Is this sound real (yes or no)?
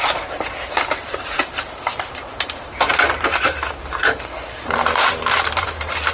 no